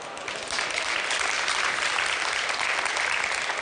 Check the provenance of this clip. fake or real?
fake